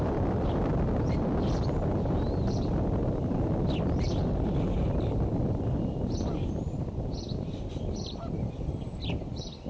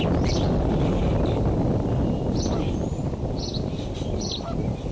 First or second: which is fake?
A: first